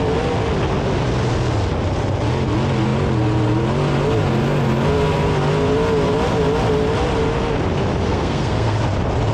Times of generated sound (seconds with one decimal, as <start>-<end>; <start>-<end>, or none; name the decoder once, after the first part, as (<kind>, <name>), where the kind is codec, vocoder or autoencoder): 8.1-8.8 (codec, SNAC)